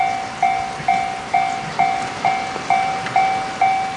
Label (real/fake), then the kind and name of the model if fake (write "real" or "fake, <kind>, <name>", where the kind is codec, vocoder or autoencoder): real